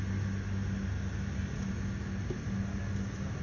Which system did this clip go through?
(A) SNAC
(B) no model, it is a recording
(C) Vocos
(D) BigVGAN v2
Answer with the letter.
B